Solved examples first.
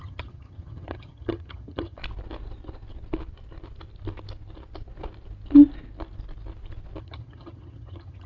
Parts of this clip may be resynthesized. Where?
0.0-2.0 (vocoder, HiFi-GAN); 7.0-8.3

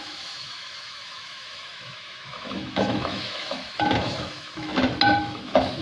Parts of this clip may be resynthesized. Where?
0.0-4.7 (autoencoder, DAC-VAE); 5.2-5.8

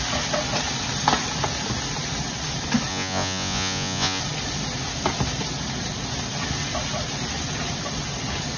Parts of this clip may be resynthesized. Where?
2.9-4.2 (vocoder, Vocos)

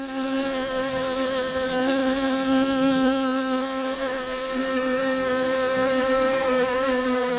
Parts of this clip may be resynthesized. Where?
0.0-7.4 (codec, SNAC)